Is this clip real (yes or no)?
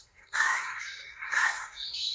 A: no